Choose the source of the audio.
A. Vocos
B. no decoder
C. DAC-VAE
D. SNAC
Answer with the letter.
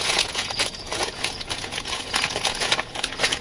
A